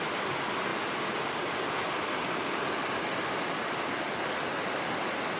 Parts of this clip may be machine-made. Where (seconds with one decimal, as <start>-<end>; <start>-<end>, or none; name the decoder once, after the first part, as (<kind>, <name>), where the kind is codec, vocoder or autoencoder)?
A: none